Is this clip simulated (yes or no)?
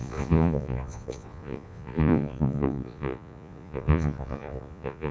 yes